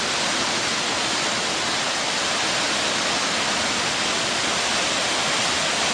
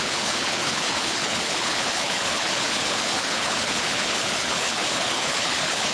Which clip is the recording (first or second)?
first